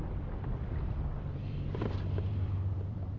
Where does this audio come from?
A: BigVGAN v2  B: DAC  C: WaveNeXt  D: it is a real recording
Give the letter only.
A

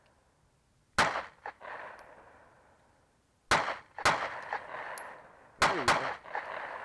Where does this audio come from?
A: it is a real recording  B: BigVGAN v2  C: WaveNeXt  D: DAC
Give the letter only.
A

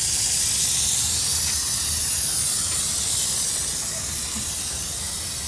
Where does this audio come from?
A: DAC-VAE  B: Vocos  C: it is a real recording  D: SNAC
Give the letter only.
C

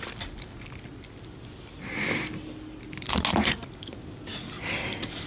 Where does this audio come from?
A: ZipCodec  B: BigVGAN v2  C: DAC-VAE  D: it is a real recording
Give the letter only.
D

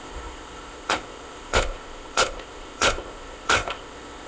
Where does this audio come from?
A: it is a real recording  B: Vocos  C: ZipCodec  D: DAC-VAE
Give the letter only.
C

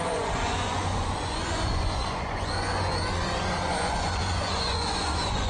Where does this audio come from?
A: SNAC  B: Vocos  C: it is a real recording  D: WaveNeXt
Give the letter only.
B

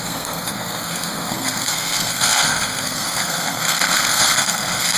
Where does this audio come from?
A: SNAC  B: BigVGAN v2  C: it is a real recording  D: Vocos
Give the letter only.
A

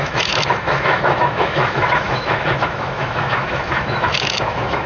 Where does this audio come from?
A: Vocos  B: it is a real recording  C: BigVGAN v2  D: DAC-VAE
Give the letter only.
D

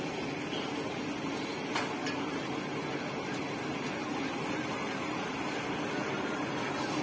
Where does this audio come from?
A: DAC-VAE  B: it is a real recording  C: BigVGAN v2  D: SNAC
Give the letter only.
B